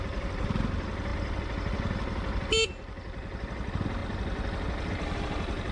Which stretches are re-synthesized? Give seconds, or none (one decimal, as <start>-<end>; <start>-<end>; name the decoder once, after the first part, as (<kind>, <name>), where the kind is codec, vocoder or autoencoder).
none